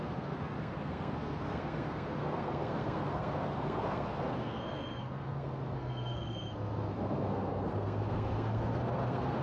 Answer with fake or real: fake